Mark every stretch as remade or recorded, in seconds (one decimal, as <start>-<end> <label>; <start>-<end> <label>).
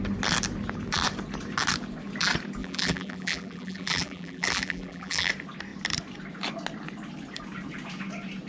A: 0.0-2.6 recorded; 2.6-5.3 remade; 5.3-8.5 recorded